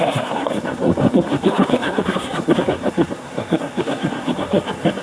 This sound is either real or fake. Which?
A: fake